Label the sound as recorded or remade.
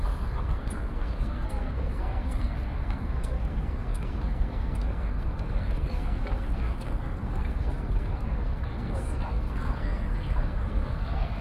remade